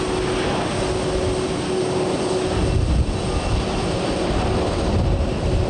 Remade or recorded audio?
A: recorded